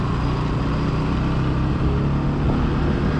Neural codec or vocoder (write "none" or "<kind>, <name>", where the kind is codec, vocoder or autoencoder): none